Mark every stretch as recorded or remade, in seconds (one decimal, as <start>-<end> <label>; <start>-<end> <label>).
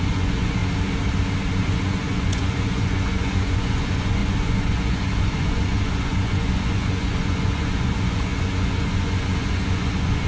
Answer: 0.0-0.6 remade; 0.6-1.6 recorded; 1.6-10.3 remade